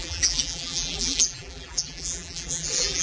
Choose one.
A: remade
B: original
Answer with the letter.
A